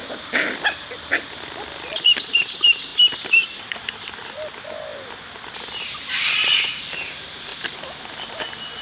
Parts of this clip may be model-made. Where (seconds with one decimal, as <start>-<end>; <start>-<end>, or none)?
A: 2.9-4.2; 4.9-6.7; 7.5-8.0